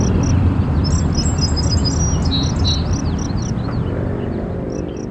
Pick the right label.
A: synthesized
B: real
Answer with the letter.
B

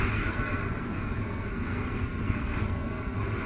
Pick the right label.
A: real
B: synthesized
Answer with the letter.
B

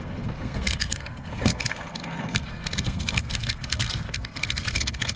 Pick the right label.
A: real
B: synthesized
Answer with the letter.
B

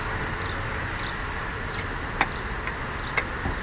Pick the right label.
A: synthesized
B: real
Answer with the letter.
B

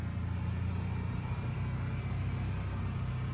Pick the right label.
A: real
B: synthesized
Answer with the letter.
A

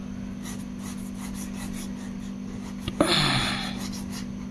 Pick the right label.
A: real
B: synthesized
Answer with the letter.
A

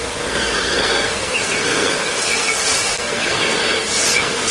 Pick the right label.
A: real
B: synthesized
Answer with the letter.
B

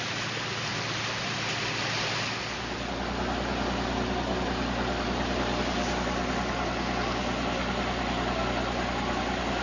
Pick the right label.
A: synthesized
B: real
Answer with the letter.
B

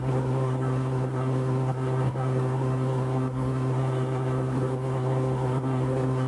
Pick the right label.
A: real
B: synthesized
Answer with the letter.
B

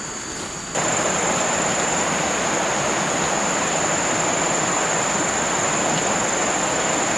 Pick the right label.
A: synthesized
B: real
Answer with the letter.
B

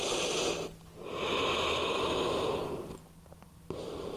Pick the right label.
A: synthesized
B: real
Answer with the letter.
B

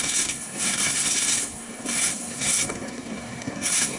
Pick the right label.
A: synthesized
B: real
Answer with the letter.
A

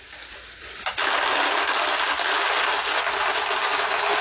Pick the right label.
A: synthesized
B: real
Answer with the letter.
B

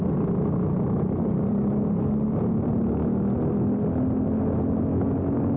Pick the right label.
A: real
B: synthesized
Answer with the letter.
A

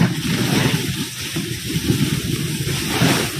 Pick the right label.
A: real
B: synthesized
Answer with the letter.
A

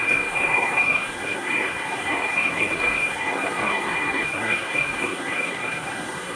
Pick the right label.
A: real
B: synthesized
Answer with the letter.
B